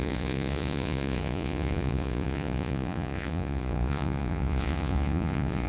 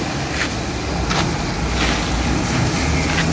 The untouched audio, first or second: second